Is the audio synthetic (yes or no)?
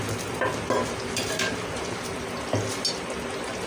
no